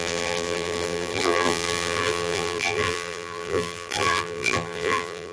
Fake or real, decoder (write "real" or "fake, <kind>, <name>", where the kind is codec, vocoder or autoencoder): fake, vocoder, BigVGAN v2